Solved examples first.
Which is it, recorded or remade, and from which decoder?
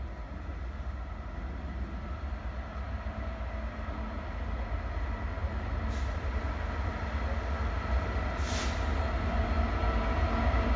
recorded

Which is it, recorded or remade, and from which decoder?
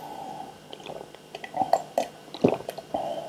recorded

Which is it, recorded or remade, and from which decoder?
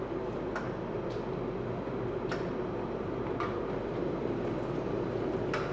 recorded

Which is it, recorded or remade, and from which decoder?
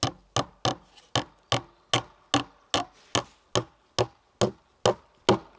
recorded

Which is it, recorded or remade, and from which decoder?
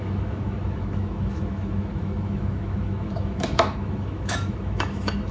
remade, autoencoder, DAC-VAE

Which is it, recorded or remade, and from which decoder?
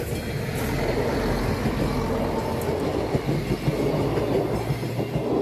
recorded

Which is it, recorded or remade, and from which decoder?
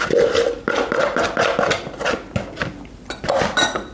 recorded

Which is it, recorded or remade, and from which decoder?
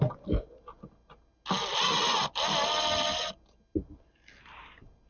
recorded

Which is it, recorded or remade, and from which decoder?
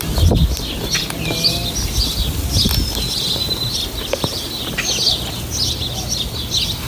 recorded